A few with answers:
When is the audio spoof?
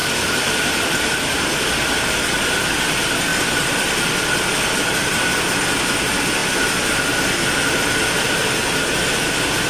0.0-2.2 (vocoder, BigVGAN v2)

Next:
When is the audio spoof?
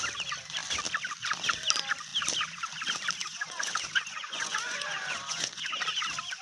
3.2-5.7 (vocoder, Vocos)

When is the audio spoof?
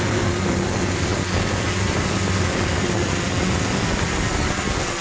none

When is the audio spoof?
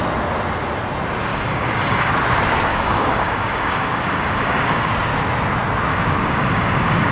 1.3-2.1 (codec, DAC); 2.7-4.9; 5.9-7.1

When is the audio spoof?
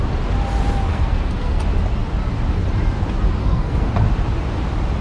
0.9-1.6 (codec, SNAC); 3.4-3.9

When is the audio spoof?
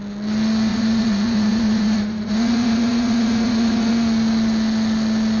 0.7-3.9 (vocoder, Vocos)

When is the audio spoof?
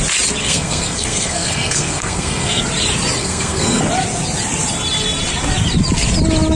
0.4-2.6 (codec, SNAC); 3.2-3.8